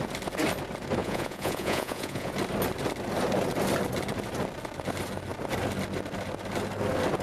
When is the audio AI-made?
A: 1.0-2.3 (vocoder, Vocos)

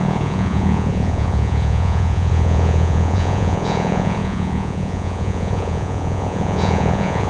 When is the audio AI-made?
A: 0.0-7.3 (vocoder, Vocos)

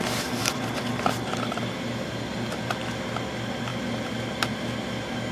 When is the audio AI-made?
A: none

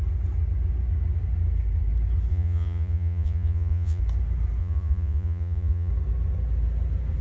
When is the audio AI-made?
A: 2.3-4.0 (vocoder, Vocos); 4.6-5.9

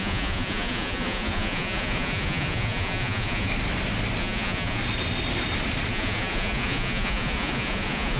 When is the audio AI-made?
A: 0.0-3.5 (vocoder, Vocos); 4.2-4.8; 5.9-8.2

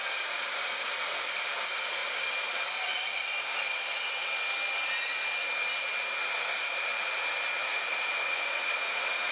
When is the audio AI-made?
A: 7.6-9.3 (vocoder, Vocos)

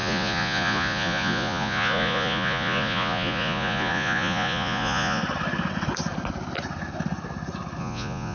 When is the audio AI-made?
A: 0.0-5.2 (vocoder, Vocos); 7.8-8.3